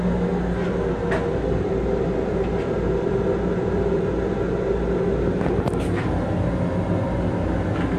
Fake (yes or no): no